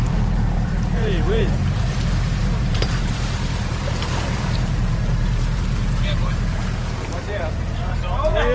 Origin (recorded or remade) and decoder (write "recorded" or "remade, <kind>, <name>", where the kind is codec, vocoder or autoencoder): remade, vocoder, BigVGAN v2